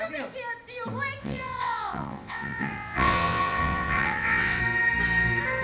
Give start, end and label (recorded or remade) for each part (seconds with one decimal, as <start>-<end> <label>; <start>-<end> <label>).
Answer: 0.0-1.2 recorded; 1.2-4.6 remade; 4.6-5.6 recorded